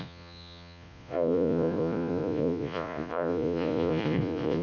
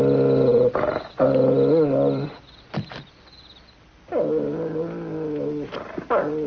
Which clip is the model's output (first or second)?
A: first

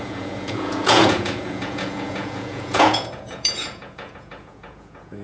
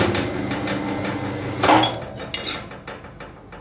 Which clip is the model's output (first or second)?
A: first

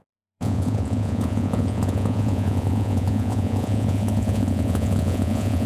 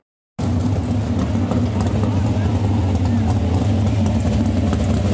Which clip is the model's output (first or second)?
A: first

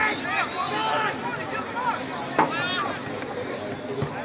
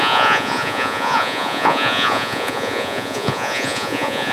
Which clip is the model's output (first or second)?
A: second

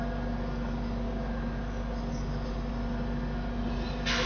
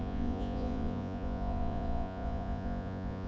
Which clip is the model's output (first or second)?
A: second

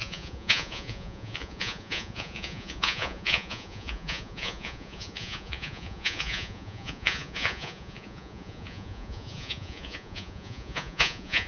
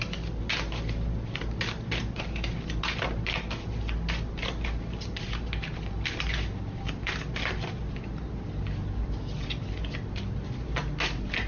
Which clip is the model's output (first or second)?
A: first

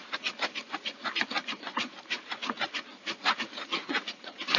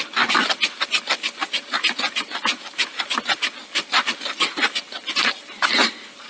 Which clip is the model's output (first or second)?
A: first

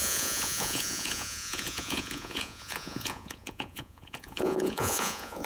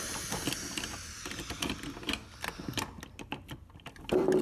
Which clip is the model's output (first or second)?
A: first